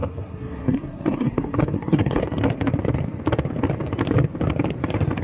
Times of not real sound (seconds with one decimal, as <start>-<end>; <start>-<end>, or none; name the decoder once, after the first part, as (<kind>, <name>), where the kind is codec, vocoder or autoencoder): 0.0-2.2 (codec, SNAC)